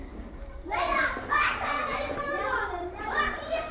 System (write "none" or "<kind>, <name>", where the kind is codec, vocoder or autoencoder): vocoder, BigVGAN v2